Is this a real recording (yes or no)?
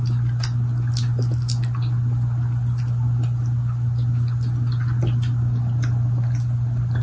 yes